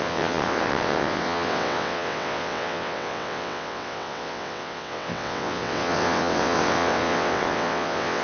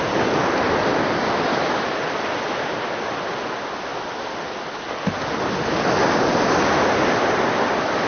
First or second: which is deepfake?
first